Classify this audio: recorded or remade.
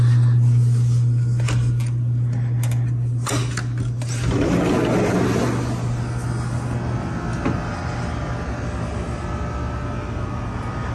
recorded